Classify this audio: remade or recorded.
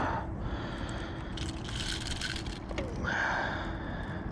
recorded